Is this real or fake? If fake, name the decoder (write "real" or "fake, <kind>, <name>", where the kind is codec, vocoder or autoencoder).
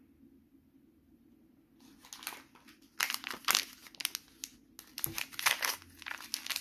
real